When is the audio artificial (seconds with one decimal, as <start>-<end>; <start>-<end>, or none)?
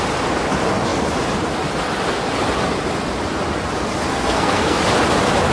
4.1-4.8